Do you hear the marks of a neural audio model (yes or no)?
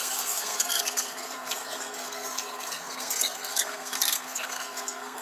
yes